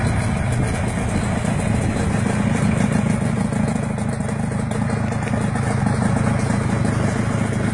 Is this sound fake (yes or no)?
no